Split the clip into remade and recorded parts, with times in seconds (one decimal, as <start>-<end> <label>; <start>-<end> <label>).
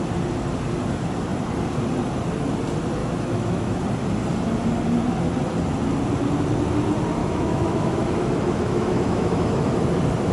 0.0-3.0 recorded; 3.0-3.8 remade; 3.8-7.2 recorded; 7.2-9.8 remade; 9.8-10.3 recorded